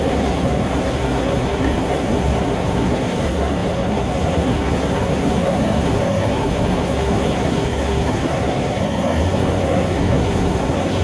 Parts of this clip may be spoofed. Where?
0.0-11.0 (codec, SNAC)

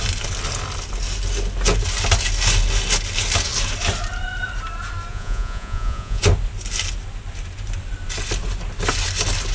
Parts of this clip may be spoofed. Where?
5.1-6.2 (vocoder, Vocos)